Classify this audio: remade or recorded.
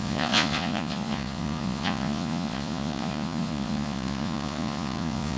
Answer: remade